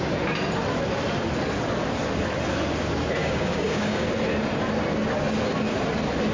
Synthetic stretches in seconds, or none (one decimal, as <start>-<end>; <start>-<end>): 3.2-4.1